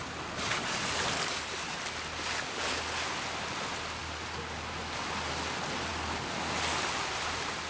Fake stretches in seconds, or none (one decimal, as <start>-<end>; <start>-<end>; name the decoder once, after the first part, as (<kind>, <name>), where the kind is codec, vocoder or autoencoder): none